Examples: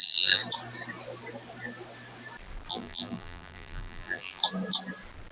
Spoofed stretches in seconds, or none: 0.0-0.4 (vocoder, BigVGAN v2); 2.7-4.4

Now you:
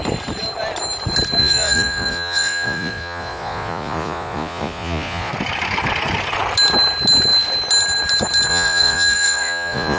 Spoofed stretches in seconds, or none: 1.4-5.3 (vocoder, Vocos); 8.5-10.0

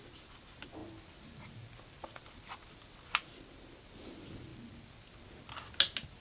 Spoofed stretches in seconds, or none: none